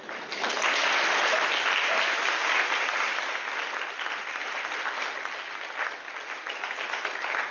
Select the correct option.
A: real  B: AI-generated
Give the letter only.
A